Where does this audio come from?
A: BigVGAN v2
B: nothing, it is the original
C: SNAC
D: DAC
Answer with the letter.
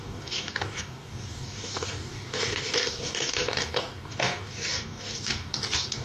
D